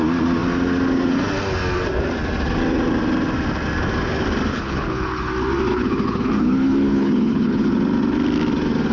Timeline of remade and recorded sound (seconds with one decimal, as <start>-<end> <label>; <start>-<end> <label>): 0.0-4.5 recorded; 4.5-5.3 remade; 5.3-5.7 recorded; 5.7-7.7 remade; 7.7-8.9 recorded